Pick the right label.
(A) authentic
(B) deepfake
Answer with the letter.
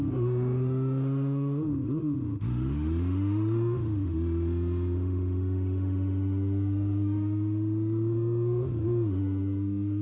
B